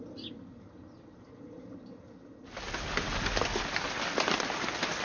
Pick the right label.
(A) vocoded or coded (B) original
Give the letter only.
B